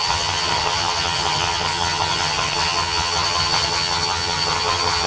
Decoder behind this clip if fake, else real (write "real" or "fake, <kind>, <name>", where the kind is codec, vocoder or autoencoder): fake, vocoder, HiFi-GAN